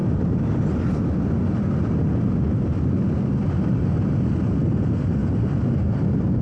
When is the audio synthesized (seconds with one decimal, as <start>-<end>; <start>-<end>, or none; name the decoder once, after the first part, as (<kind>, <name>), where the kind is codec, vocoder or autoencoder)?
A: 0.0-3.8 (vocoder, BigVGAN v2)